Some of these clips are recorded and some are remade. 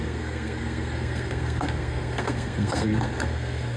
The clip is remade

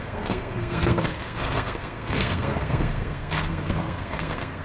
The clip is remade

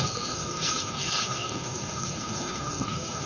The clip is remade